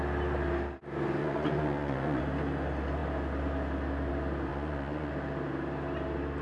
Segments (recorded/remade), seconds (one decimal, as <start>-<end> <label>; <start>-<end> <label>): 0.0-1.2 recorded; 1.2-2.2 remade; 2.2-4.5 recorded; 4.5-5.1 remade; 5.1-6.4 recorded